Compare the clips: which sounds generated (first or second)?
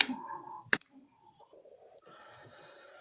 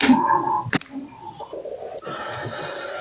first